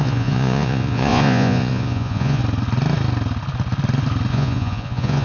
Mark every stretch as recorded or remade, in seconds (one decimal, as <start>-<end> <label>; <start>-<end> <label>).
0.0-2.4 remade; 2.4-4.3 recorded; 4.3-5.2 remade